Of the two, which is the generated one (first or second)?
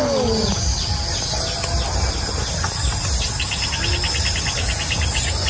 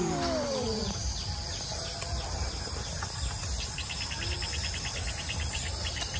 second